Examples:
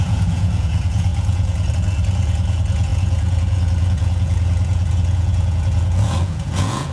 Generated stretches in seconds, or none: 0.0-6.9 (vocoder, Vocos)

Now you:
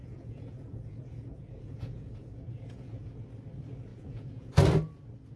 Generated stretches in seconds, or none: 0.0-3.2 (vocoder, Vocos); 3.9-4.5

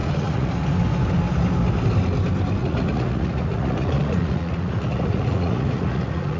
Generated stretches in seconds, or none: 0.0-0.5 (vocoder, Vocos); 2.6-6.4

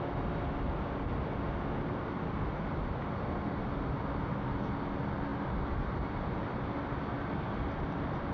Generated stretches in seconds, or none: none